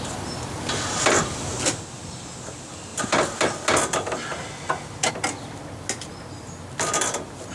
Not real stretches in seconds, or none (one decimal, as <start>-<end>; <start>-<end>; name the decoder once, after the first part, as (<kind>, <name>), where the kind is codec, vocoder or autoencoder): none